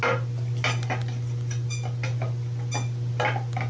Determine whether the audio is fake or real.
real